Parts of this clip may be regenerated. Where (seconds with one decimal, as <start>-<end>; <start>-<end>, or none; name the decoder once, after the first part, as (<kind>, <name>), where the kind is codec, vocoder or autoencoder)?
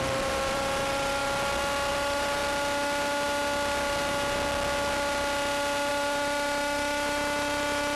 0.0-1.2 (vocoder, BigVGAN v2); 1.9-2.4; 5.9-8.0